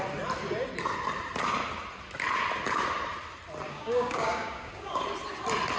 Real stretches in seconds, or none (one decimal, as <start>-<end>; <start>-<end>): 0.0-3.7; 5.0-5.8